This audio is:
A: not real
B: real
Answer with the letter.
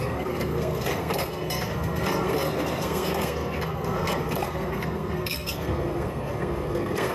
A